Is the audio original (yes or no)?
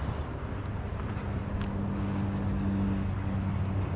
yes